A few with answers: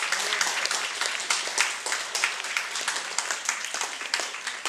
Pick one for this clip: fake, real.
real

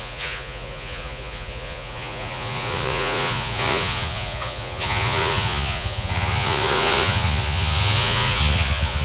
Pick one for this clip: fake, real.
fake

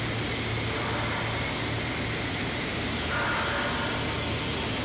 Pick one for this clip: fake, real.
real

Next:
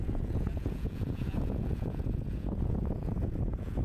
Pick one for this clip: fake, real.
fake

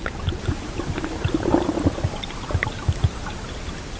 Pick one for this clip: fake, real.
real